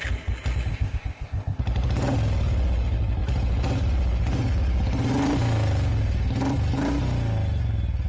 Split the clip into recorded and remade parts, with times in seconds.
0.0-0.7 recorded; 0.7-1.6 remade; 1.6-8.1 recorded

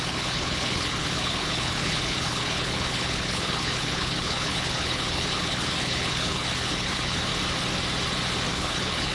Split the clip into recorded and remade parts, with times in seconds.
0.0-7.3 remade; 7.3-8.5 recorded; 8.5-9.1 remade

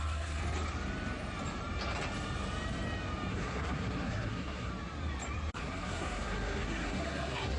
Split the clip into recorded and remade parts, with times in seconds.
0.0-0.4 remade; 0.4-3.3 recorded; 3.3-4.7 remade; 4.7-5.5 recorded; 5.5-7.6 remade